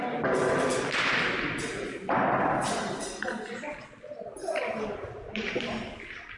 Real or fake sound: real